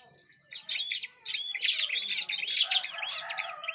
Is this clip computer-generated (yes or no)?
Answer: no